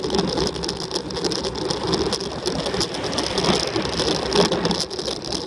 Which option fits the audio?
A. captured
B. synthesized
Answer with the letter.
A